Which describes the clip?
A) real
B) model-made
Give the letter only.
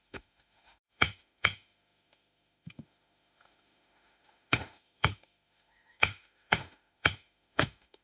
B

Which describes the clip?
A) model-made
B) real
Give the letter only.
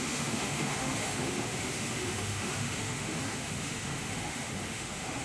A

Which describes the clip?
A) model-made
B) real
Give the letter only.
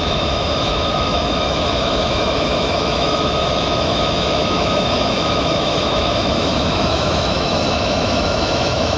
A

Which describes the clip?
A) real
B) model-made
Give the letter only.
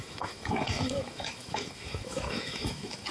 B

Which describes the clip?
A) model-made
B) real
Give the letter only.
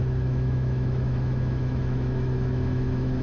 A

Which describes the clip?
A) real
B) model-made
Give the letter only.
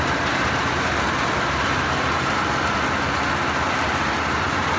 A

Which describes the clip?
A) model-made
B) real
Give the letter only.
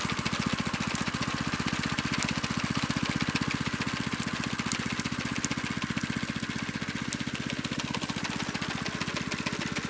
B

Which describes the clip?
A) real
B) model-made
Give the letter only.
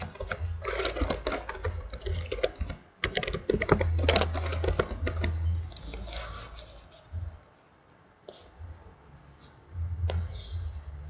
A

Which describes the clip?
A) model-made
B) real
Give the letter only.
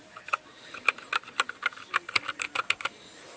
B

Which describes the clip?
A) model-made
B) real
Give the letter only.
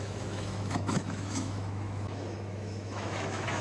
A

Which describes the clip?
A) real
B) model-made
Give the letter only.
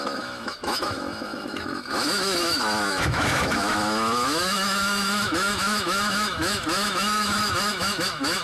B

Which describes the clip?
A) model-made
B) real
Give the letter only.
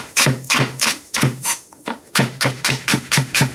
A